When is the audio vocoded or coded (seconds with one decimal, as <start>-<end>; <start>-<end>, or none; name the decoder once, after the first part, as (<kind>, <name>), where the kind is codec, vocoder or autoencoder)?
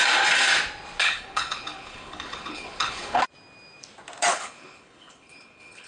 1.0-3.2 (codec, HILCodec); 4.3-5.9